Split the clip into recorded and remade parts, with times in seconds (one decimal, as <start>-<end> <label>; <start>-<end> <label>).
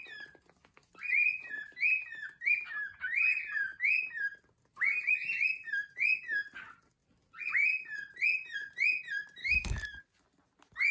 0.0-9.4 recorded; 9.4-10.0 remade; 10.0-10.9 recorded